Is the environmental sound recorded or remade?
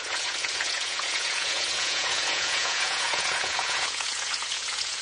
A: remade